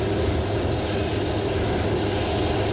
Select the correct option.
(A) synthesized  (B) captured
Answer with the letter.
B